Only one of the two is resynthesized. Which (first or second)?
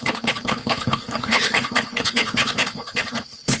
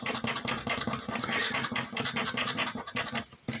first